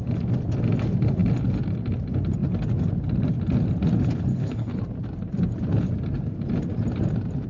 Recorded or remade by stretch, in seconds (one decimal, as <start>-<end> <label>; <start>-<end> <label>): 0.0-4.3 recorded; 4.3-4.8 remade; 4.8-7.5 recorded

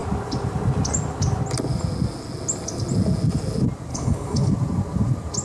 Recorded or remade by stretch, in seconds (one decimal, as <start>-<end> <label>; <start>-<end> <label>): 0.0-3.9 recorded; 3.9-4.5 remade; 4.5-5.4 recorded

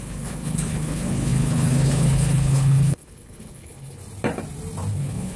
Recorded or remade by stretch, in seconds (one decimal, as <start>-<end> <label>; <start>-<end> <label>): 0.0-4.0 remade; 4.0-4.9 recorded; 4.9-5.4 remade